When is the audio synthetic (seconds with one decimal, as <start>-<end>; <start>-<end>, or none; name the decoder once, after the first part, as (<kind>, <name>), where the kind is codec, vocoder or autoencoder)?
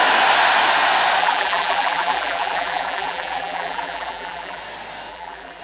1.2-4.6 (vocoder, BigVGAN v2); 5.1-5.6